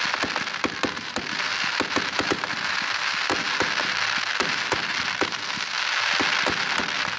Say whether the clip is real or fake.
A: real